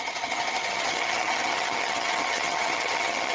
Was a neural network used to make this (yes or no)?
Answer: yes